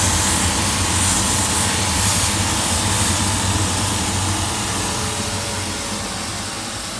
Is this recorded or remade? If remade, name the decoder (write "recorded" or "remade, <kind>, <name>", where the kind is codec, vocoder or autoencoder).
recorded